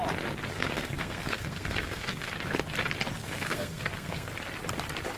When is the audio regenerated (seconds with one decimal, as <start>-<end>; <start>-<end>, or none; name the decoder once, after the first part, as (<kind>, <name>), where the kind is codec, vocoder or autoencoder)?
0.5-2.3 (codec, SNAC); 3.2-4.3